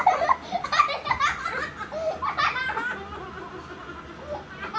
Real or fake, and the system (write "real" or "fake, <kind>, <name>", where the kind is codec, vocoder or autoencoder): real